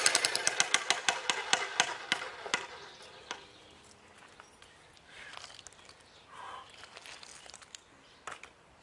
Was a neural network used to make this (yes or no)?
no